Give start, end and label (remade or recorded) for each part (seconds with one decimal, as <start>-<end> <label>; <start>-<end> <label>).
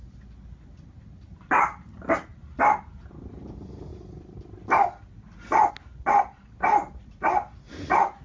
0.0-8.2 recorded